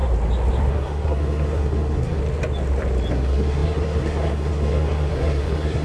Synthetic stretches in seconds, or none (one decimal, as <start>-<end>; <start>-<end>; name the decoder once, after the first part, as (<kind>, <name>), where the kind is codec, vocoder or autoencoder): 0.7-2.2 (codec, SNAC); 3.1-5.8